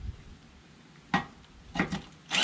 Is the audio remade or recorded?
recorded